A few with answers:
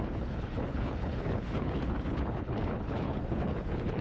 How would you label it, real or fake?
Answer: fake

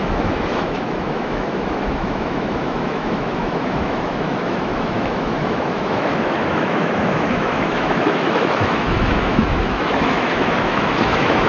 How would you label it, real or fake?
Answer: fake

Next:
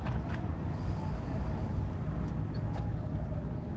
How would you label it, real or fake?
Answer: fake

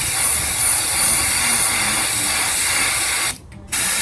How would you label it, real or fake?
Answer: real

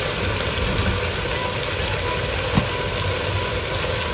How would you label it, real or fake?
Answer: real